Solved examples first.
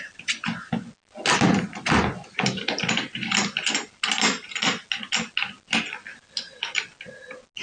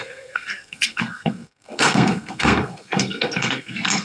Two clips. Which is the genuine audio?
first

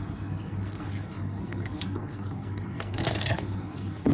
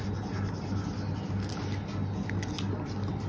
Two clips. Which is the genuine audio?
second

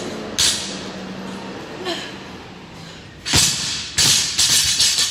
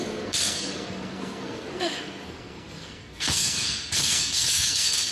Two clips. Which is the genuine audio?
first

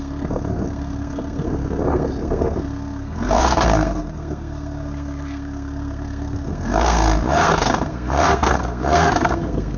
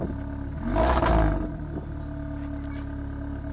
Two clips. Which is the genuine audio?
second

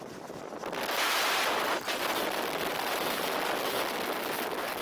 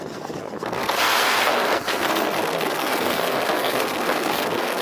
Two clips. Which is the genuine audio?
first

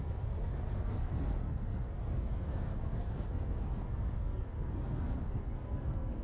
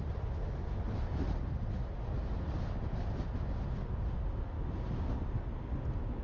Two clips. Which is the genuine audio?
second